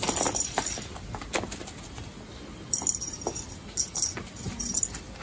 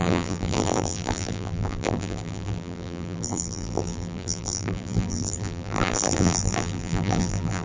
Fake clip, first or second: second